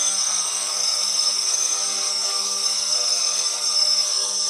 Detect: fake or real fake